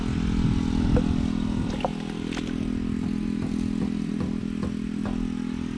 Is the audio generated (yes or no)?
no